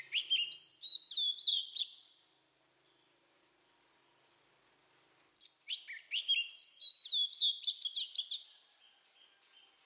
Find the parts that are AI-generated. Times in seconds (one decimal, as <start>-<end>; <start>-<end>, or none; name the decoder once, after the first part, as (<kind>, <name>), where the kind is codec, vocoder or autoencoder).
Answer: 1.5-2.2 (vocoder, Vocos)

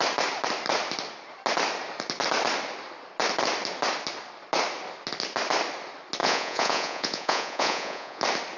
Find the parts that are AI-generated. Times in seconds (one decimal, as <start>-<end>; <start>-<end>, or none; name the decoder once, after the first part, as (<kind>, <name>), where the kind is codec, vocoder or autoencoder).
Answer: 6.2-8.2 (vocoder, Vocos)

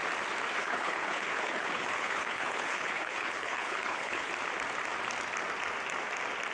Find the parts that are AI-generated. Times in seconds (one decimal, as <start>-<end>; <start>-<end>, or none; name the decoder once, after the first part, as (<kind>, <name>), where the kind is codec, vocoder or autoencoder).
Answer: 0.6-4.3 (codec, HILCodec)

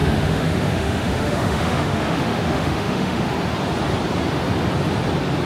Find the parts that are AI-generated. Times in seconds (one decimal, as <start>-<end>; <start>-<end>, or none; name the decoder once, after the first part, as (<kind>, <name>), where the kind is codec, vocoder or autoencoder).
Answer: 0.0-3.3 (autoencoder, DAC-VAE)

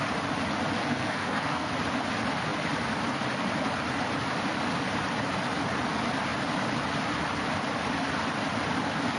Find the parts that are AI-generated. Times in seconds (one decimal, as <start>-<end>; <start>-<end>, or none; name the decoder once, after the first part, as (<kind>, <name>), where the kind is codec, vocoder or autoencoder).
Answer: 0.8-1.7 (codec, SNAC)

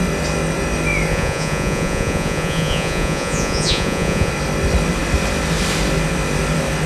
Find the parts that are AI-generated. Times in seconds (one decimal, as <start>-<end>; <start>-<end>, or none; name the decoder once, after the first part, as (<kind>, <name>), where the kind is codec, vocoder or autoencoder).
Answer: 1.1-4.3 (vocoder, Vocos)

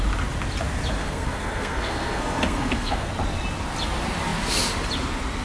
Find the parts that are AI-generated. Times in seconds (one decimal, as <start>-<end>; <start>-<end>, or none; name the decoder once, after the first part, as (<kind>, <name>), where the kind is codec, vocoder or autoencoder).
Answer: 1.0-3.1 (codec, SNAC)

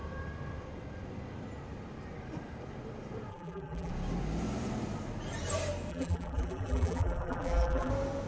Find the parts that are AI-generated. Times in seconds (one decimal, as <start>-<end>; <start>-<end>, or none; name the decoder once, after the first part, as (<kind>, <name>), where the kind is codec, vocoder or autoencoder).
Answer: 3.3-3.9 (vocoder, BigVGAN v2); 5.9-7.9